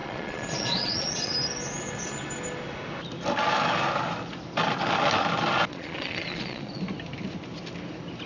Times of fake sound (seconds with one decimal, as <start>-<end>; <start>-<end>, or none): 0.0-1.3; 5.7-6.8